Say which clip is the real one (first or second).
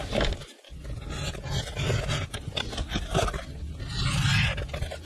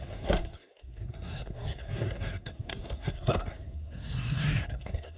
first